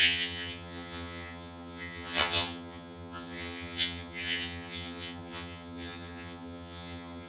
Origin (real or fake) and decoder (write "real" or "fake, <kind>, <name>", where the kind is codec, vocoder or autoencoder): fake, vocoder, HiFi-GAN